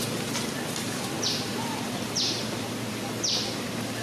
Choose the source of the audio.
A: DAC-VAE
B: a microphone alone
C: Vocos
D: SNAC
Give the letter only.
B